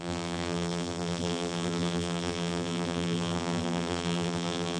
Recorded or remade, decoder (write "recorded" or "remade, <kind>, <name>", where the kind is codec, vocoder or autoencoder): remade, vocoder, BigVGAN v2